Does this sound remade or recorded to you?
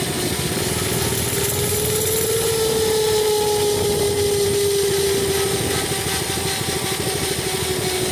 recorded